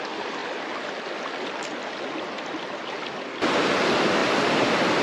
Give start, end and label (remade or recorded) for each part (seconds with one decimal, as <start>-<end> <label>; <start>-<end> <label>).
0.0-5.0 recorded